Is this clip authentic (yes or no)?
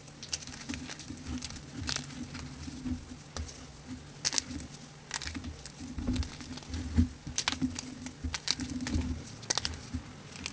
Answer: yes